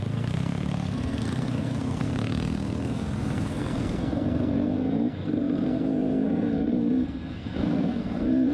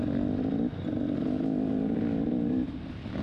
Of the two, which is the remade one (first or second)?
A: first